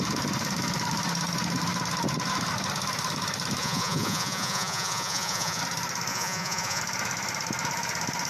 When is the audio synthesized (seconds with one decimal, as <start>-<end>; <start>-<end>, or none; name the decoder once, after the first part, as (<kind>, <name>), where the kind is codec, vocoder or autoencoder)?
3.6-5.6 (vocoder, Vocos); 6.1-6.8